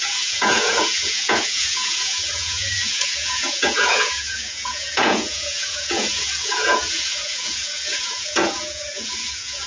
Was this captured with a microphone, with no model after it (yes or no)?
no